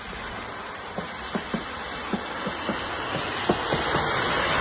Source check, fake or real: real